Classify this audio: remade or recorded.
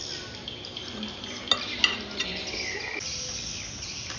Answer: recorded